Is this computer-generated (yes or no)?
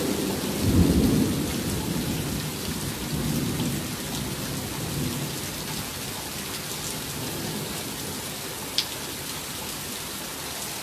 no